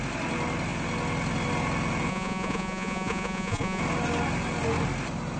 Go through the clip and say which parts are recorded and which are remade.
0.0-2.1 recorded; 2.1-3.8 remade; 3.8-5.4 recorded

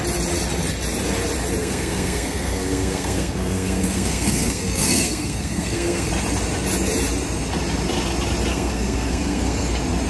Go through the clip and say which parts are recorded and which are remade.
0.0-1.6 recorded; 1.6-6.1 remade; 6.1-8.5 recorded; 8.5-9.7 remade; 9.7-10.1 recorded

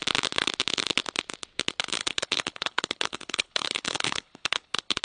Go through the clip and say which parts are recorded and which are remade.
0.0-2.0 recorded; 2.0-5.0 remade

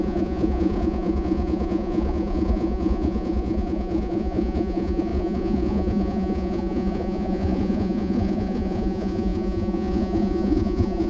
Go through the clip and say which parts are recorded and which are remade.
0.0-11.1 remade

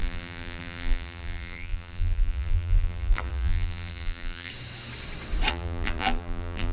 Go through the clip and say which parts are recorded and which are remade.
0.0-4.5 remade; 4.5-5.5 recorded; 5.5-6.7 remade